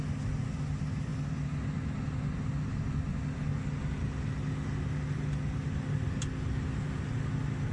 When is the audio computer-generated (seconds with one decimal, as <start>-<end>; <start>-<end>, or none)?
none

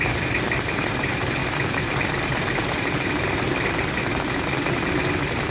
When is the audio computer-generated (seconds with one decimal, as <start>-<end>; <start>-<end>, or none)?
0.0-5.5